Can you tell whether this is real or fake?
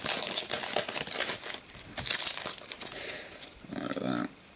real